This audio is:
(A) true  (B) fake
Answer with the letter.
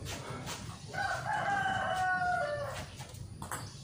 A